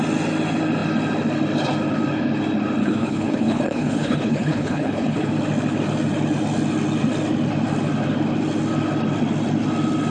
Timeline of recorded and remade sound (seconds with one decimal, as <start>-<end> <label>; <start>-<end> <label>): 0.0-2.8 recorded; 2.8-5.3 remade; 5.3-10.1 recorded